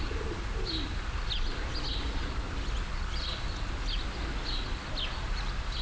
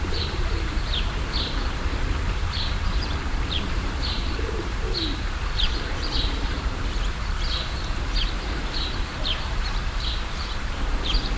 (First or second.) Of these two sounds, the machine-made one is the second